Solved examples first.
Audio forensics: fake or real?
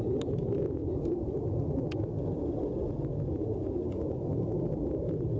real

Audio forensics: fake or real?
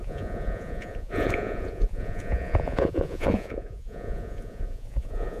fake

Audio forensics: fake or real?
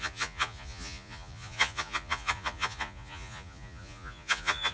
fake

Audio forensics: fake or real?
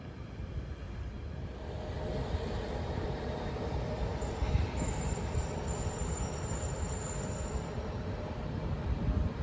fake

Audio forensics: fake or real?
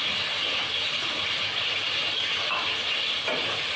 real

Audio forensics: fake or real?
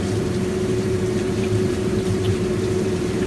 fake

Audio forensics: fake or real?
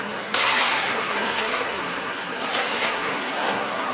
fake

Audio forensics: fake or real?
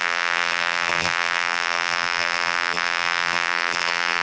fake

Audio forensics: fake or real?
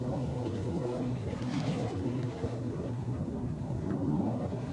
fake